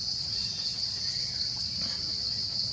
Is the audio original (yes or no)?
yes